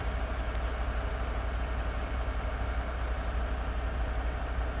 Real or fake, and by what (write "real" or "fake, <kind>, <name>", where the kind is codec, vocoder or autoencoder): real